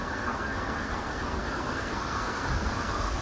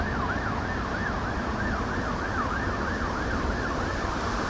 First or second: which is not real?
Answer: first